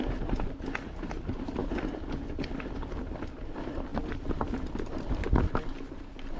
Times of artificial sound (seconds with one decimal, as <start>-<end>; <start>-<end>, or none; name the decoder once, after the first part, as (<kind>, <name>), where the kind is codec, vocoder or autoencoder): 3.9-5.3 (vocoder, BigVGAN v2)